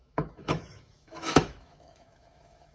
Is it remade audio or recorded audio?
remade